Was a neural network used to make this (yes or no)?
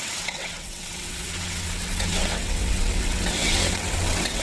yes